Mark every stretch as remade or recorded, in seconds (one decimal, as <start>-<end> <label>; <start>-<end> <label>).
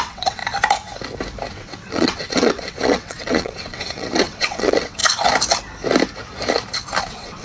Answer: 0.0-0.4 remade; 0.4-1.5 recorded; 1.5-5.0 remade; 5.0-7.0 recorded; 7.0-7.4 remade